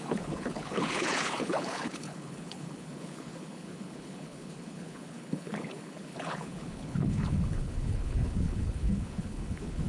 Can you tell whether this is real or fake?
fake